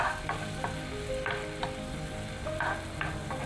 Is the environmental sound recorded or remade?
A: recorded